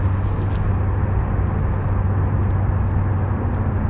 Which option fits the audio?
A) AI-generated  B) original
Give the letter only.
B